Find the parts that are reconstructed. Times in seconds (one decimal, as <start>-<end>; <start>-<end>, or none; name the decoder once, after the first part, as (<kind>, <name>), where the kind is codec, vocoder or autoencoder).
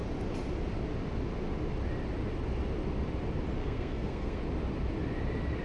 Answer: 3.6-4.4 (codec, SNAC)